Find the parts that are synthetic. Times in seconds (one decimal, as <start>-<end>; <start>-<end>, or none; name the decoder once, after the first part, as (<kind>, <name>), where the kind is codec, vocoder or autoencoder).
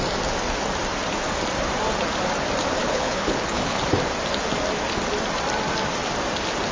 2.8-3.8 (codec, HILCodec)